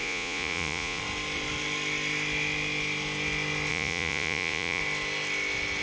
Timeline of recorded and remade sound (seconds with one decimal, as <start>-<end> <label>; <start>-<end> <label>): 0.0-1.0 remade; 1.0-3.7 recorded; 3.7-4.8 remade; 4.8-5.8 recorded